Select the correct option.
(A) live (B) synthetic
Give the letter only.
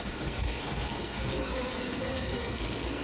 B